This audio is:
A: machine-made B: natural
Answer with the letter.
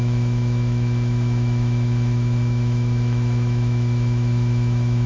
A